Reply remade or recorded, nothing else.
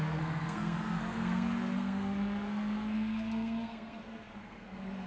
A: remade